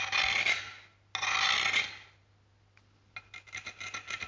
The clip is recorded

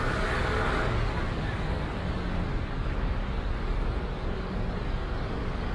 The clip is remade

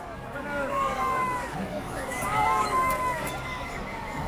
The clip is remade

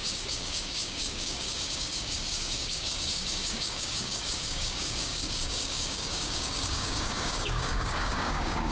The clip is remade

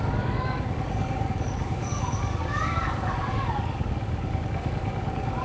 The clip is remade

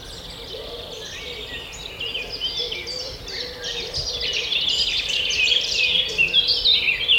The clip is recorded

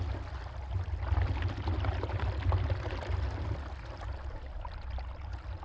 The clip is recorded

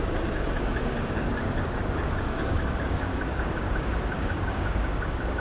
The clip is remade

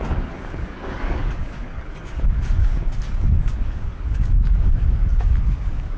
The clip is remade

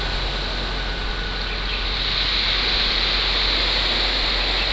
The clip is recorded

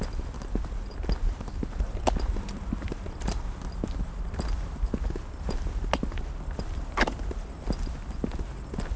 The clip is recorded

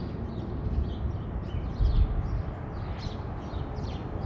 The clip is recorded